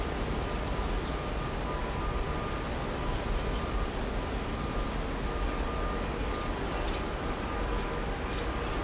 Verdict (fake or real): real